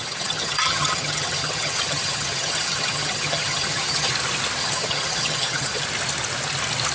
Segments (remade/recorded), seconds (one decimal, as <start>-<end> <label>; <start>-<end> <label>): 0.0-4.1 remade; 4.1-4.6 recorded; 4.6-5.8 remade; 5.8-6.9 recorded